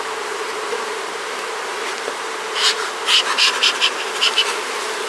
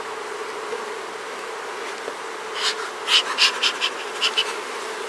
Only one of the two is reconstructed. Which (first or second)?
first